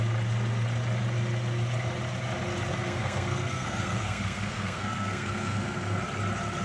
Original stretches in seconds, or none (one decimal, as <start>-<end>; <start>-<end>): 0.0-2.7; 6.0-6.6